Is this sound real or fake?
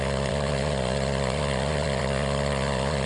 fake